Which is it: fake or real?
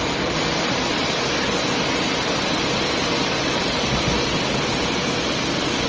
real